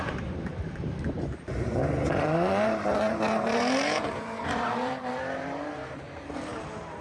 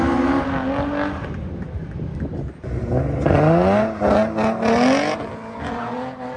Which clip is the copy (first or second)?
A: first